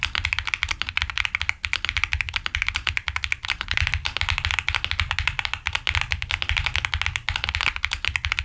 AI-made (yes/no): no